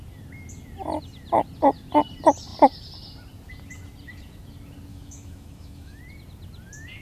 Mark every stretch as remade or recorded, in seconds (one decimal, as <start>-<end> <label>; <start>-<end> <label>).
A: 0.0-4.9 recorded; 4.9-6.0 remade; 6.0-7.0 recorded